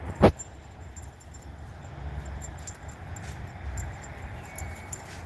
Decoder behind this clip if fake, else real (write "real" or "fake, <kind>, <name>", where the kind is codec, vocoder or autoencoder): real